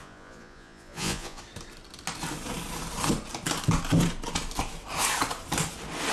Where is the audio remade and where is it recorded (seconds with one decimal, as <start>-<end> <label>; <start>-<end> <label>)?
0.0-1.4 remade; 1.4-6.1 recorded